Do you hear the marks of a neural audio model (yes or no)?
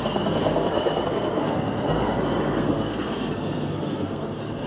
yes